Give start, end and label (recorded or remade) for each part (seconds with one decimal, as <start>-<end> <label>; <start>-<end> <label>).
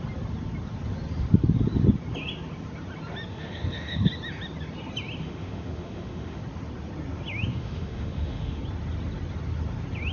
0.0-3.3 recorded; 3.3-4.1 remade; 4.1-5.2 recorded; 5.2-6.4 remade; 6.4-7.5 recorded; 7.5-8.6 remade; 8.6-10.1 recorded